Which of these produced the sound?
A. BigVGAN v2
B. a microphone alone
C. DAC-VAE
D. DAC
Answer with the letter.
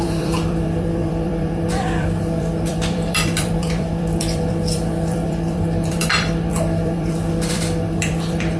A